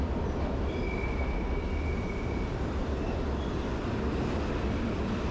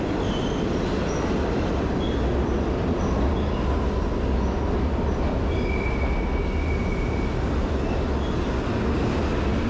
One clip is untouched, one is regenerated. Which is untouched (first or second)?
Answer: second